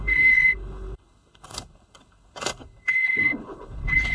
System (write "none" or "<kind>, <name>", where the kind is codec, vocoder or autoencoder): codec, HILCodec